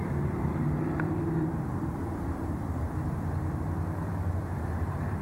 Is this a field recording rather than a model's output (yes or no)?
no